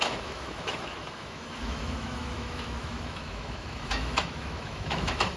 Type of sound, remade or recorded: remade